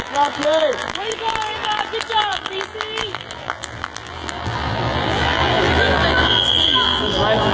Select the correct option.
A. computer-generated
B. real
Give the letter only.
A